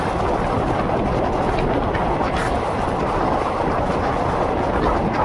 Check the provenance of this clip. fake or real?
real